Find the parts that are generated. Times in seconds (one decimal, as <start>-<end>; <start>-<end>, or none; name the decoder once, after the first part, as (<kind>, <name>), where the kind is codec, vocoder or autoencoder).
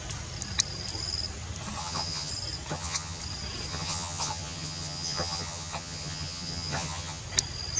1.8-2.3 (vocoder, HiFi-GAN); 2.7-3.2; 3.7-7.2